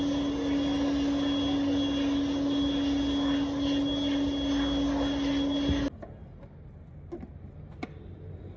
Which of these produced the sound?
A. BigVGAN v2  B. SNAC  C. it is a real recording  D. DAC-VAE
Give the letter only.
C